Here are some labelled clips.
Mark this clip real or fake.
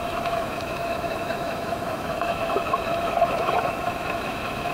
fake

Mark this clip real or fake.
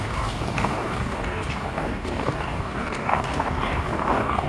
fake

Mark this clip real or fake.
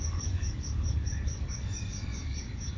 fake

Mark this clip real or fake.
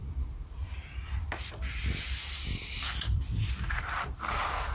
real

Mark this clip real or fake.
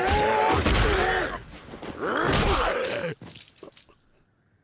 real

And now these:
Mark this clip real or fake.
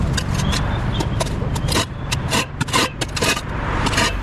real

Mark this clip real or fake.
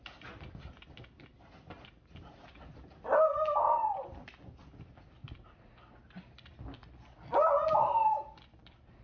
real